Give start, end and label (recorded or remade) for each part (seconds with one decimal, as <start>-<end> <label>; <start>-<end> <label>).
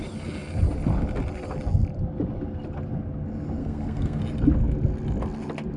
0.0-3.6 recorded; 3.6-4.2 remade; 4.2-5.8 recorded